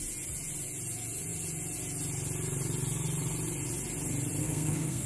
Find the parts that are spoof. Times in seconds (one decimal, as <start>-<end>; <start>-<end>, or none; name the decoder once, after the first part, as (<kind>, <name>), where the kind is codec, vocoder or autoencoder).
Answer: 4.4-5.1 (codec, SNAC)